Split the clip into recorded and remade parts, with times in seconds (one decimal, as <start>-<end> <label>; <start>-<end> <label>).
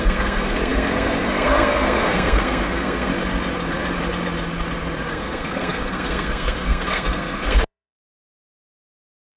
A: 0.0-3.1 remade; 3.1-5.1 recorded; 5.1-9.4 remade